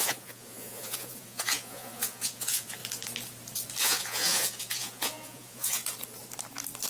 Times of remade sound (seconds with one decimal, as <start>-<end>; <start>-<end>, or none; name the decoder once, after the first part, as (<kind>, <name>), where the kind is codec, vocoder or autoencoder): 0.0-2.8 (vocoder, Vocos); 3.8-5.8